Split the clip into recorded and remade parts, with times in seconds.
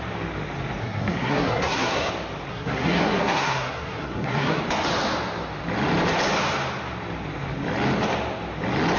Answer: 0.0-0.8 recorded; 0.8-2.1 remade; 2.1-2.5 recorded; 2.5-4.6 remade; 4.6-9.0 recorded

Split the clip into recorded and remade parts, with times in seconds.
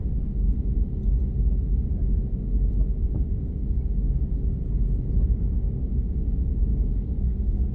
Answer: 0.0-6.7 recorded; 6.7-7.7 remade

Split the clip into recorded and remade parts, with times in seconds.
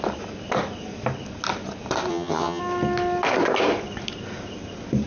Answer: 0.0-2.1 recorded; 2.1-2.6 remade; 2.6-5.1 recorded